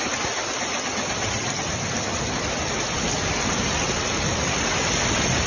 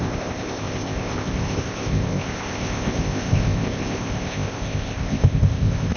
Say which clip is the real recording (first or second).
first